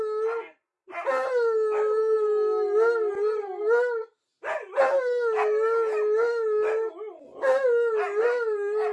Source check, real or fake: real